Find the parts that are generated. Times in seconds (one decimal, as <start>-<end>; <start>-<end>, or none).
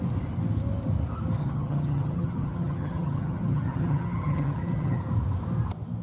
1.4-5.0